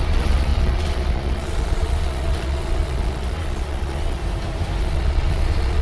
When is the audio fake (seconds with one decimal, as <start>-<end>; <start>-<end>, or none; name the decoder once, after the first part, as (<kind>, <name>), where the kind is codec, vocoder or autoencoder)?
0.0-4.2 (vocoder, Vocos); 4.8-5.8